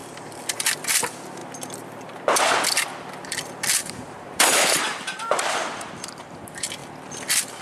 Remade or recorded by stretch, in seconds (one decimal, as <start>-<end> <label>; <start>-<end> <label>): 0.0-0.8 recorded; 0.8-1.4 remade; 1.4-4.0 recorded; 4.0-6.8 remade; 6.8-7.6 recorded